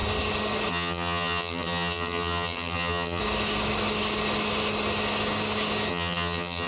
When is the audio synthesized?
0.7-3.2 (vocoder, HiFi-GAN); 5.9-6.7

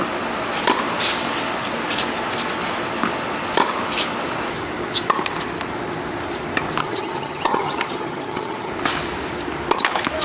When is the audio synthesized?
6.8-8.7 (vocoder, HiFi-GAN)